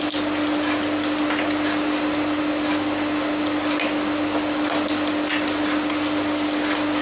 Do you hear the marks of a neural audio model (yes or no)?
no